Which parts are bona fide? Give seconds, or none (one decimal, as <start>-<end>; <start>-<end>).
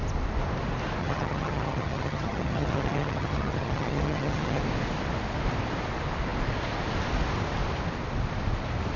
0.0-1.0; 4.6-9.0